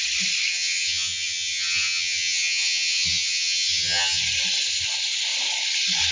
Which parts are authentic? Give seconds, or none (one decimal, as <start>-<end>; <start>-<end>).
0.0-0.5; 4.2-6.1